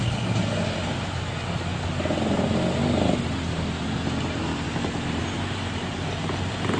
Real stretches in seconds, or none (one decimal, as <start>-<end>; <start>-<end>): 0.0-6.8